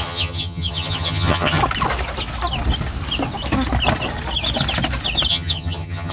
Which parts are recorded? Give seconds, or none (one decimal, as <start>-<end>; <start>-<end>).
1.6-5.3